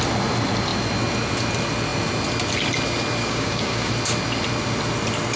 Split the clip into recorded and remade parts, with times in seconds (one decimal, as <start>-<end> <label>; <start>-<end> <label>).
0.0-3.2 recorded; 3.2-3.9 remade; 3.9-5.4 recorded